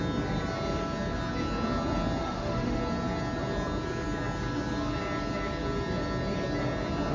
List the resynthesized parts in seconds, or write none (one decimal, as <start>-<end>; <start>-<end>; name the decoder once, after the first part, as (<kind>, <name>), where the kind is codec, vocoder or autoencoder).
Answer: 2.2-2.8 (autoencoder, DAC-VAE)